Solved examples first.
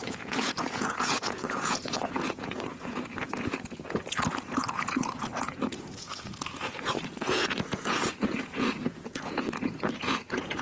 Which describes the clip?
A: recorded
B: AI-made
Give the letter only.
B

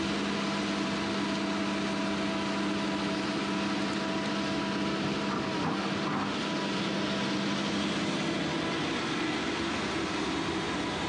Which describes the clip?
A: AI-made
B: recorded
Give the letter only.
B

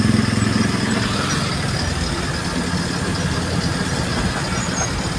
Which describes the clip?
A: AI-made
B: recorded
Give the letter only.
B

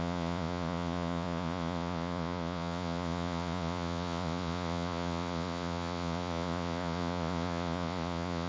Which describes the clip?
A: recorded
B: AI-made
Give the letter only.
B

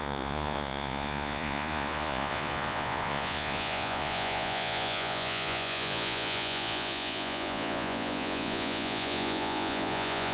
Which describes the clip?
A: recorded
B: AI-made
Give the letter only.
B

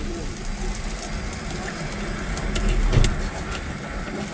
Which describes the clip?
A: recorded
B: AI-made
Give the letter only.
A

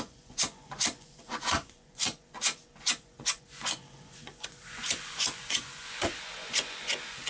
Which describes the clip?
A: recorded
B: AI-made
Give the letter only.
B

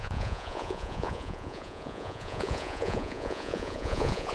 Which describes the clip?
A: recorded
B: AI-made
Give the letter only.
B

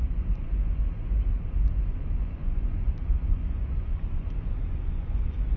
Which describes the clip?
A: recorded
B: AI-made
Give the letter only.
B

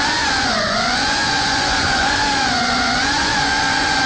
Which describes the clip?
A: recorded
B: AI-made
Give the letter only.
B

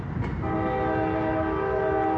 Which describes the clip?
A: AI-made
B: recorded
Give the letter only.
B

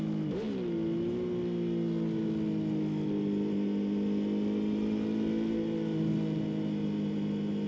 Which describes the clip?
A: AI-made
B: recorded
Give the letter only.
B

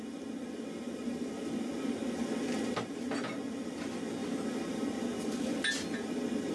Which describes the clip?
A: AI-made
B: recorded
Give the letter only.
B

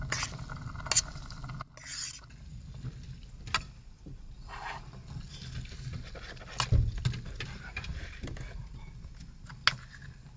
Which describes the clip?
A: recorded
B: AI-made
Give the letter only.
A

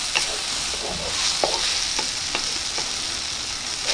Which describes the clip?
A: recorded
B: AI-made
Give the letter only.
A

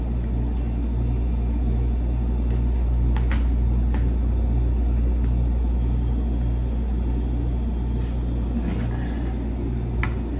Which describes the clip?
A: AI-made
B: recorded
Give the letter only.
B